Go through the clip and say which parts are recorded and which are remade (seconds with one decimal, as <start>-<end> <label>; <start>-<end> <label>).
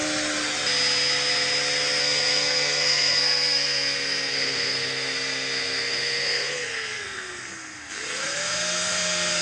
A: 0.0-2.0 recorded; 2.0-9.4 remade